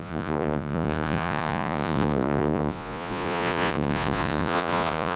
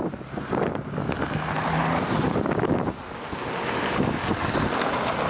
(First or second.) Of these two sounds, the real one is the second